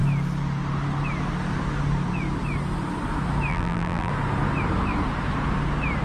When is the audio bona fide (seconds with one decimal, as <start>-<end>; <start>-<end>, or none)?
0.0-3.5; 4.1-6.0